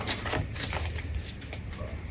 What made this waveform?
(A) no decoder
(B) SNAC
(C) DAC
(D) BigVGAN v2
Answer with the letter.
A